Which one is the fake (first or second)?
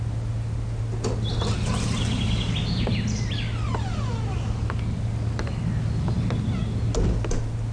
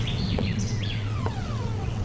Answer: second